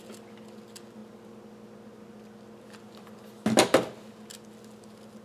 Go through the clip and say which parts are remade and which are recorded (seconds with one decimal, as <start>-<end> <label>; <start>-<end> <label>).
0.0-5.2 recorded